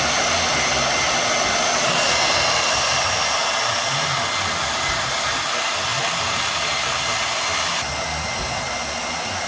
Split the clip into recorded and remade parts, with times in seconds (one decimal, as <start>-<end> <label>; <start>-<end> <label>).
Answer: 0.0-9.5 recorded